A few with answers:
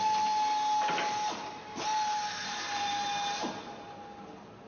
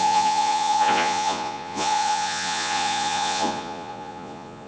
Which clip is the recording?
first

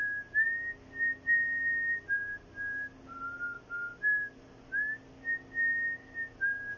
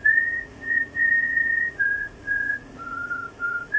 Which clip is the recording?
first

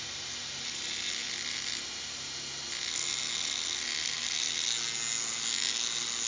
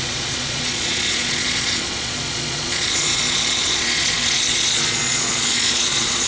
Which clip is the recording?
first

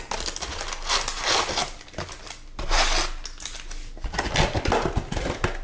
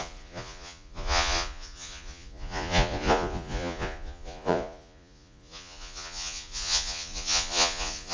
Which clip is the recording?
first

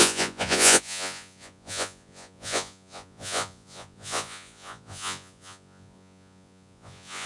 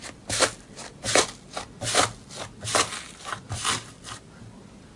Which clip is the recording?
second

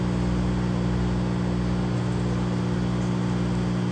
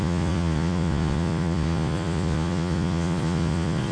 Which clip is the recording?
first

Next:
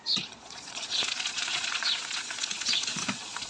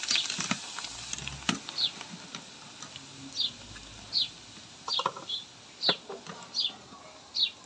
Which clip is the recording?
second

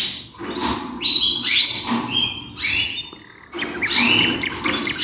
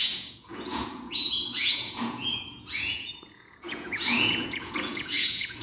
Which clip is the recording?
first